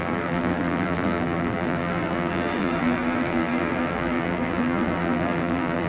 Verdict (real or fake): fake